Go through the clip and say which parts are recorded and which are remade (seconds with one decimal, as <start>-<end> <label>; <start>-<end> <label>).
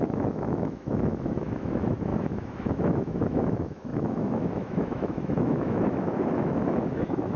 0.0-7.4 remade